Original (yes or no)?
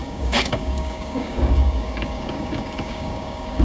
no